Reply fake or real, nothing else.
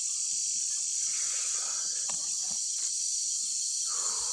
real